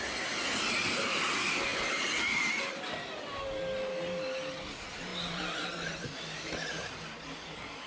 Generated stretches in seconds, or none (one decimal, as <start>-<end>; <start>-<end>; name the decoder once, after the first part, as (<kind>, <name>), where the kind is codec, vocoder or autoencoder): none